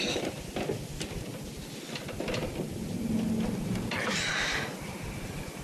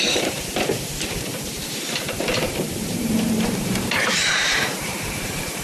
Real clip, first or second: first